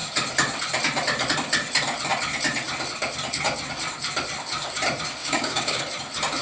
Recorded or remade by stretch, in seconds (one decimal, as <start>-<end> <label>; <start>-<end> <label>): 0.0-5.2 recorded; 5.2-5.8 remade; 5.8-6.4 recorded

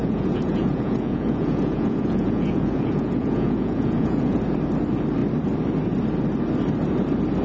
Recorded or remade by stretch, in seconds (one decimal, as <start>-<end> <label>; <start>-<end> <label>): 0.0-4.4 remade; 4.4-7.4 recorded

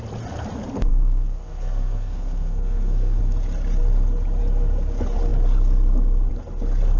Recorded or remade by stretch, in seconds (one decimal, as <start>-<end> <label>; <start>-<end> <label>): 0.0-0.9 recorded; 0.9-3.2 remade; 3.2-7.0 recorded

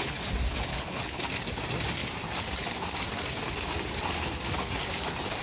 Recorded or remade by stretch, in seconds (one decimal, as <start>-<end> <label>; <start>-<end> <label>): 0.0-0.7 recorded; 0.7-1.2 remade; 1.2-5.4 recorded

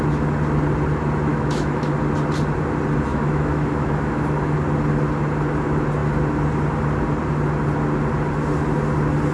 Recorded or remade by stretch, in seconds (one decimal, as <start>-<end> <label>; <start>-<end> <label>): 0.0-1.3 recorded; 1.3-1.9 remade; 1.9-3.1 recorded; 3.1-4.2 remade; 4.2-9.3 recorded